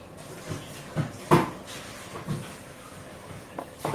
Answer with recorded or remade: recorded